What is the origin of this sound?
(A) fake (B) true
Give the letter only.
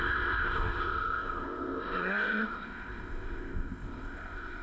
A